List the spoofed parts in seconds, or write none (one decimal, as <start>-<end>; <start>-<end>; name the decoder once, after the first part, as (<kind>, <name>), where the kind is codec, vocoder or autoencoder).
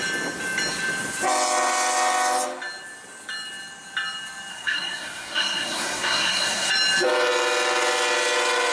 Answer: 4.5-6.7 (codec, SNAC)